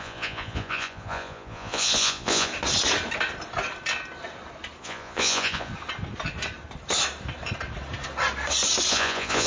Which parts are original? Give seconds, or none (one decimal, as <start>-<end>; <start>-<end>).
2.5-4.8; 5.7-8.9